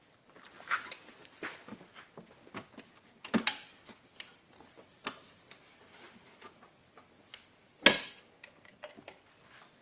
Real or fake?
real